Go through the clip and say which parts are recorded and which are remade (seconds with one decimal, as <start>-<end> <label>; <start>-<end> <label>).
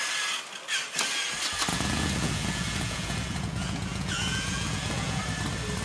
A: 0.0-1.7 recorded; 1.7-5.2 remade; 5.2-5.8 recorded